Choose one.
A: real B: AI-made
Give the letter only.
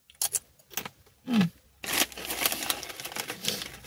A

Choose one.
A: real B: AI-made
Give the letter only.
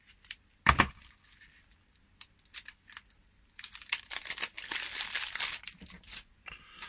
A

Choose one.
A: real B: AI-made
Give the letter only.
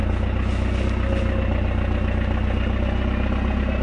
A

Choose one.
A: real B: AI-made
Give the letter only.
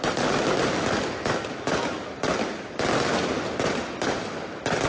A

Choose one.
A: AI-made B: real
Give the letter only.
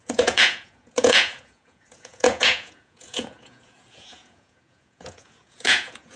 A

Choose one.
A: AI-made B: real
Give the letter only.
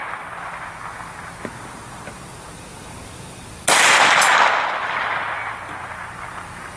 B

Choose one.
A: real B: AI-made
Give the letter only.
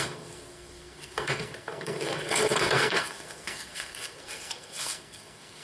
B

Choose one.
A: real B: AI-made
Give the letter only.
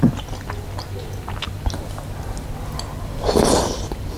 A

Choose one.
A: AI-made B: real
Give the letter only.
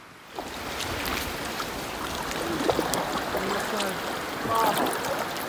B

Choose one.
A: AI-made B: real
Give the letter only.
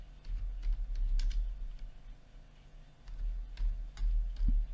B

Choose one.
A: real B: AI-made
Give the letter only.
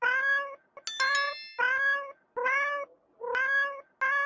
A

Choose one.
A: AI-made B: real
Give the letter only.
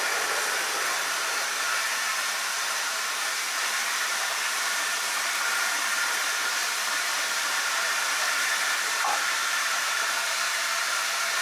A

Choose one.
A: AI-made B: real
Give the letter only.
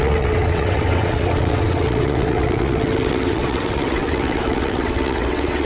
A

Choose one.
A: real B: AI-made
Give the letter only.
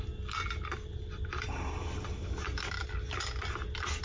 A